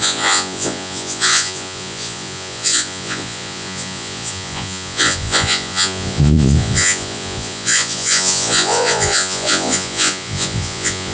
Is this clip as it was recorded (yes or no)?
no